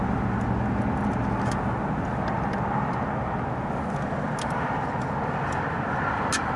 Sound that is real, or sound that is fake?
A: real